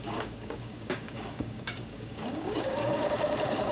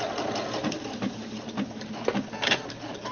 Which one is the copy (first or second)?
first